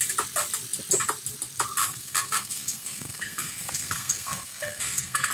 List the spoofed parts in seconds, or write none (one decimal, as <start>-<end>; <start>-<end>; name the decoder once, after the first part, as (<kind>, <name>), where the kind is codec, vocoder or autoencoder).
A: 1.8-5.3 (codec, SNAC)